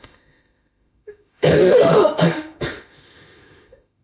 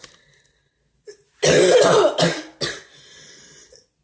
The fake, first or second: first